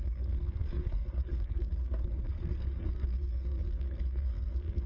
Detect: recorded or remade remade